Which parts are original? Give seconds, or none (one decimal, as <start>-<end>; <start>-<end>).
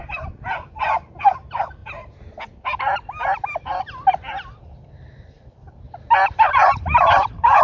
0.0-7.6